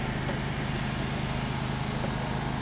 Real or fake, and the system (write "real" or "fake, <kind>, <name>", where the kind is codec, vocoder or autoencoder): real